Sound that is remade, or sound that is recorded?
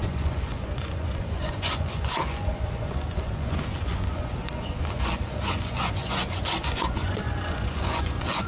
remade